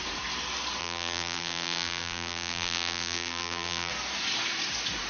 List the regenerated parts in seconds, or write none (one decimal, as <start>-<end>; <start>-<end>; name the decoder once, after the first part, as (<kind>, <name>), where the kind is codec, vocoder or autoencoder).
0.8-3.9 (vocoder, BigVGAN v2)